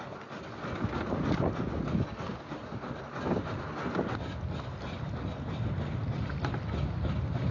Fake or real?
real